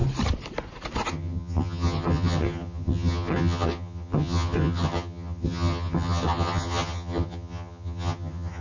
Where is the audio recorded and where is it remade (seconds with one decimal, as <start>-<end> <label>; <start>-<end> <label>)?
0.0-1.1 recorded; 1.1-8.6 remade